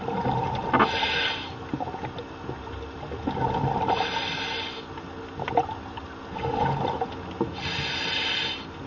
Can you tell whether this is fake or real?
real